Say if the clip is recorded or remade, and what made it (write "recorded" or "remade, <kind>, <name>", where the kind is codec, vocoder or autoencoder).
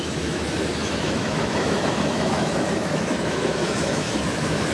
remade, autoencoder, DAC-VAE